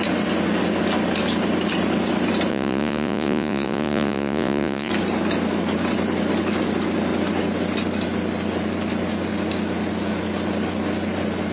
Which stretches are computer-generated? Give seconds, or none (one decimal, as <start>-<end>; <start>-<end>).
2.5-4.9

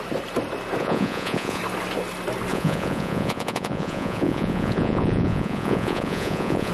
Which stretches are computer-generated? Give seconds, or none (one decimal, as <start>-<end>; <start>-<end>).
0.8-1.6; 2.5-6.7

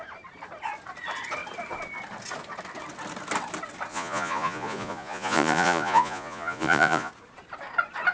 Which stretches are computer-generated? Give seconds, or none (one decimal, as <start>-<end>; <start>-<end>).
3.9-7.1

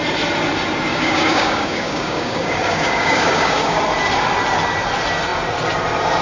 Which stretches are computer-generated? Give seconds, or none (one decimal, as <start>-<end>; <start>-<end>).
0.9-3.8